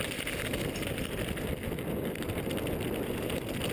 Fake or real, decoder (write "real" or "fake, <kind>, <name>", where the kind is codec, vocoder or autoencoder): fake, vocoder, BigVGAN v2